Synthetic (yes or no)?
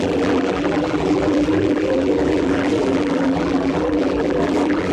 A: yes